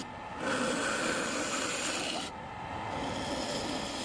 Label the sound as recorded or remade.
recorded